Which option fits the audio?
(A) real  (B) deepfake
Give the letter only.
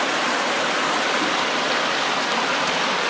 A